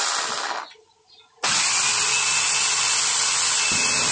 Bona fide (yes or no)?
yes